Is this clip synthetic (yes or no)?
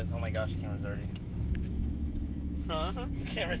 yes